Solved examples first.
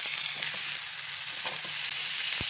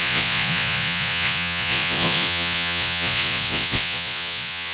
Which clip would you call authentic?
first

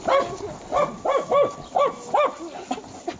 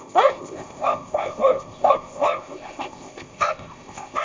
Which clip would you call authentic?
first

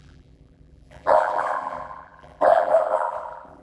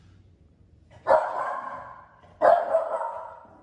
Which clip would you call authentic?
second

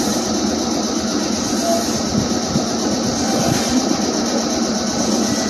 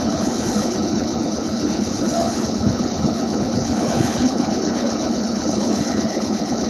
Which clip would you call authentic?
first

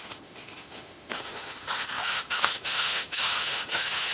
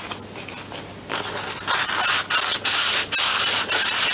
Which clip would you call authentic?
second